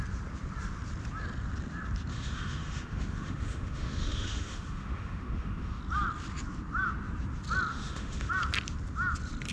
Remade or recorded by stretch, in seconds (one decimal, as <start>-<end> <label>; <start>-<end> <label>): 0.0-2.1 recorded; 2.1-5.8 remade; 5.8-7.7 recorded; 7.7-8.3 remade; 8.3-9.5 recorded